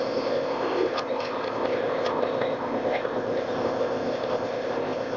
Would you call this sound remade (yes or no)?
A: yes